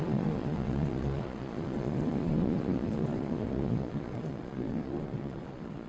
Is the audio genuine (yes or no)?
no